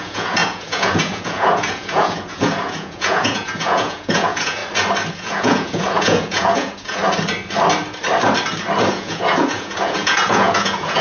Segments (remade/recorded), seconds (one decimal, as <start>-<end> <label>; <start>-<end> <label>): 0.0-4.6 remade; 4.6-5.1 recorded; 5.1-7.0 remade; 7.0-8.9 recorded; 8.9-11.0 remade